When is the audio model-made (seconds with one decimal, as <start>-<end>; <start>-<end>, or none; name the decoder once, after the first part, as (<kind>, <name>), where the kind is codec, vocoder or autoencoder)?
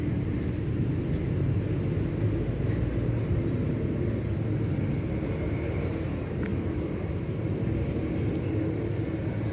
6.5-7.1 (vocoder, BigVGAN v2)